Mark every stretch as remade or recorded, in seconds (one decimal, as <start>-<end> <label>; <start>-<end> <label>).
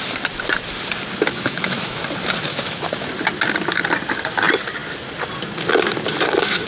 0.0-1.3 recorded; 1.3-2.0 remade; 2.0-2.5 recorded; 2.5-3.1 remade; 3.1-6.7 recorded